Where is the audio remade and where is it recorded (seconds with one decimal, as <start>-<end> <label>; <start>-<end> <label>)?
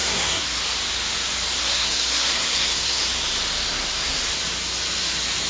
0.0-0.6 remade; 0.6-1.6 recorded; 1.6-3.0 remade; 3.0-3.7 recorded; 3.7-4.2 remade; 4.2-5.5 recorded